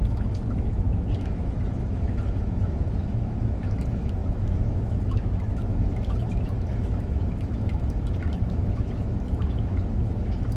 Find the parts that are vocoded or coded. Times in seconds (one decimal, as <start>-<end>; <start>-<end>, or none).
0.0-10.6

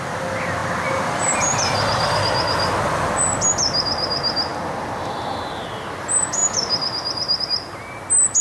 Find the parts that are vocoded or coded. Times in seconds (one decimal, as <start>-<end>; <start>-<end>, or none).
none

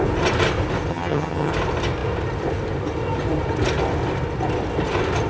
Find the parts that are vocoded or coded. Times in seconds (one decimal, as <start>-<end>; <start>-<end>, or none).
0.9-1.5

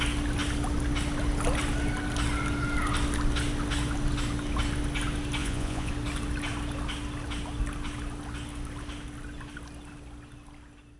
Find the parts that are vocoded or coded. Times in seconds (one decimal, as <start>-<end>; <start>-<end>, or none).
5.4-5.9

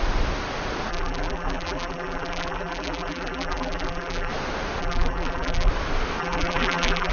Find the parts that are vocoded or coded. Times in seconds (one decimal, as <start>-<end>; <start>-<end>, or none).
0.9-4.3; 4.8-5.7; 6.2-7.1